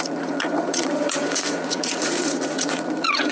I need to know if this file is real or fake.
fake